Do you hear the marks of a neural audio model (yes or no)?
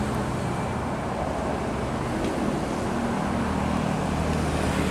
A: no